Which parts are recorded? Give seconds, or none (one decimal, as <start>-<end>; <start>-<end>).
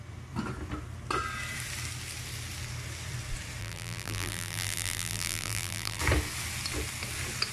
0.0-3.6; 6.0-7.5